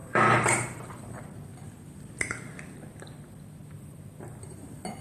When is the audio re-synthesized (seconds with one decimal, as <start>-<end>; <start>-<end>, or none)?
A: 0.0-1.2